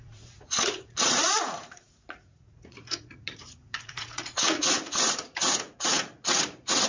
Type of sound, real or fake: fake